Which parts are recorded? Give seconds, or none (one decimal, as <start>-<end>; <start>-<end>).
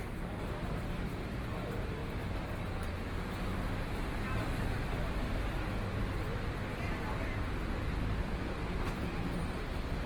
0.0-10.1